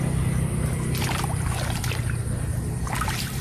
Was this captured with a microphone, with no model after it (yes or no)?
yes